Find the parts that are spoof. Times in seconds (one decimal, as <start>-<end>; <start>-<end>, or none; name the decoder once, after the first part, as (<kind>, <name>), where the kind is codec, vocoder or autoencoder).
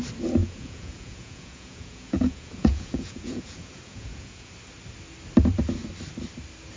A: 0.4-4.5 (vocoder, Vocos)